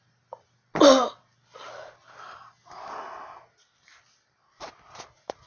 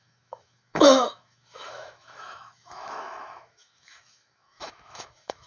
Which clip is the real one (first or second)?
first